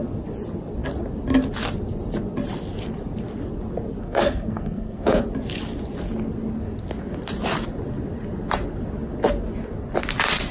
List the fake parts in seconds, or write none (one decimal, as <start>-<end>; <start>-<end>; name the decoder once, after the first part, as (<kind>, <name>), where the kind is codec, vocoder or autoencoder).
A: 4.0-5.2 (codec, SNAC)